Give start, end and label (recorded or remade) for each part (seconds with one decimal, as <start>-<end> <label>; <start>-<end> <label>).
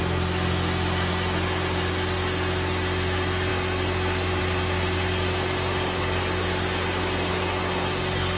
0.0-8.4 recorded